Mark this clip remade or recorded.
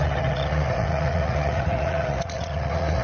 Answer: remade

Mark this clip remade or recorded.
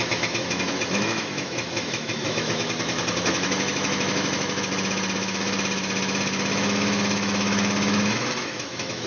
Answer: remade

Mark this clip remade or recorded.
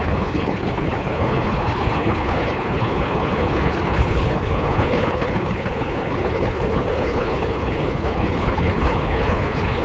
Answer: remade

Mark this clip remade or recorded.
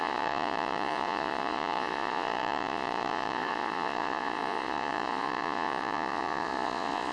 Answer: remade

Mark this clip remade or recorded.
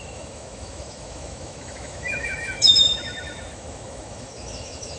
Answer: remade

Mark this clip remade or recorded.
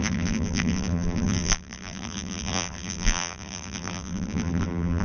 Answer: remade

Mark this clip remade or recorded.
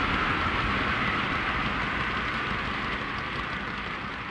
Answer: recorded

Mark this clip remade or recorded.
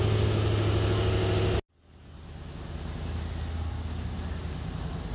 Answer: recorded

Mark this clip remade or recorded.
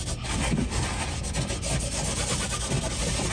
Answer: recorded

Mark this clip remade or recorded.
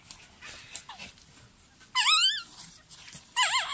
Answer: recorded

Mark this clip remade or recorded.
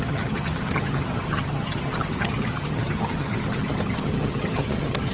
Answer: remade